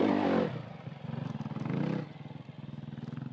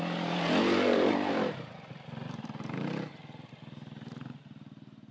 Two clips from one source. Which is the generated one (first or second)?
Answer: second